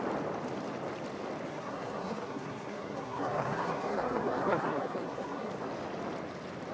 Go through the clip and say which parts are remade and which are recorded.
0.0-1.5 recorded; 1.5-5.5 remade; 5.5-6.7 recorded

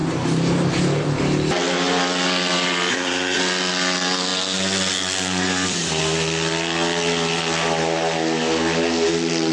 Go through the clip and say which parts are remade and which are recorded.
0.0-2.9 recorded; 2.9-3.4 remade; 3.4-9.5 recorded

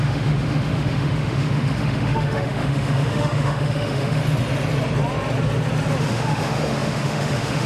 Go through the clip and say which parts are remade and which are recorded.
0.0-4.2 remade; 4.2-6.0 recorded; 6.0-7.7 remade